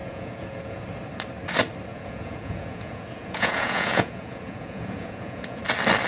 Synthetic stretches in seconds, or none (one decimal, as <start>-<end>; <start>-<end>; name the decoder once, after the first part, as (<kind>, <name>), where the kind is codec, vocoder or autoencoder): 0.0-0.8 (vocoder, Vocos); 1.9-5.6